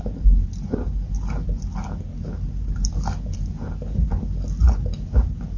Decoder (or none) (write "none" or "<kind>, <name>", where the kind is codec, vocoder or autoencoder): none